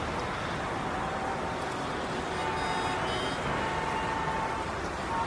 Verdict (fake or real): real